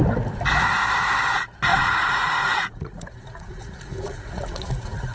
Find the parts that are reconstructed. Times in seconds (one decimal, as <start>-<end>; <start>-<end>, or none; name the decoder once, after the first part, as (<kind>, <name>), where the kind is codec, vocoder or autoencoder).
1.7-5.1 (vocoder, Vocos)